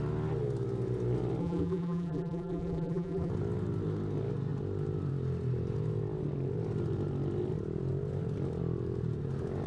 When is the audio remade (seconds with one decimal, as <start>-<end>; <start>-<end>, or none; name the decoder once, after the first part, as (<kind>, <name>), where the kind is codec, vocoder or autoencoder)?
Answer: 1.4-3.3 (vocoder, BigVGAN v2)